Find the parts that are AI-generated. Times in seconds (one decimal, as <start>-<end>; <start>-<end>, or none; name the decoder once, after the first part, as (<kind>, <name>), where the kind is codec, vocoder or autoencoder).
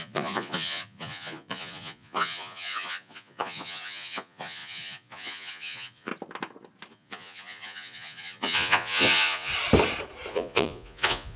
0.0-6.1 (vocoder, Vocos); 6.9-9.5; 10.3-11.4